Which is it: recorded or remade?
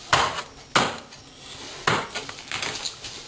recorded